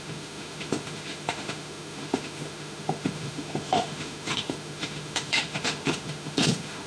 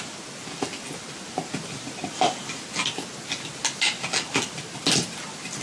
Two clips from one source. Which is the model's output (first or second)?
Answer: first